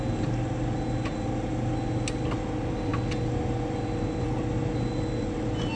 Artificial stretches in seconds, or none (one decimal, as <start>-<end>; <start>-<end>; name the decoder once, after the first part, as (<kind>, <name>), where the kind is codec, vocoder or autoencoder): none